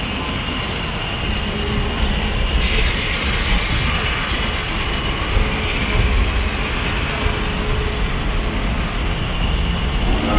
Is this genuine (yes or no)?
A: yes